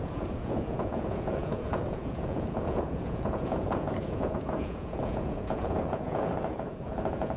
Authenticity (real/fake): fake